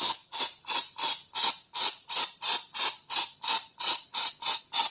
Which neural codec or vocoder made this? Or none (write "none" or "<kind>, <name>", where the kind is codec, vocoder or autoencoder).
none